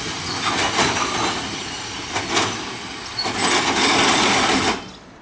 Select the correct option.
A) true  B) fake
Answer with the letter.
A